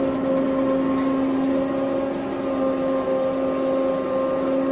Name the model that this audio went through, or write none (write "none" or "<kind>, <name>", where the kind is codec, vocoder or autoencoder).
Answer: none